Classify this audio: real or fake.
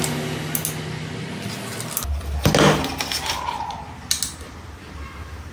real